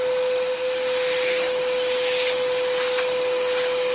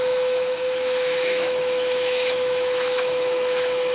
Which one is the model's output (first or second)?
second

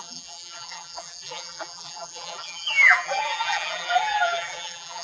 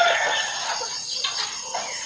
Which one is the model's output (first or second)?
first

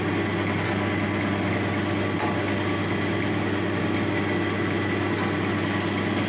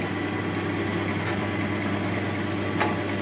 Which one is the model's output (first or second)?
second